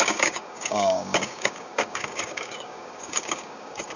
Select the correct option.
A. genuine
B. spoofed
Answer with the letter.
B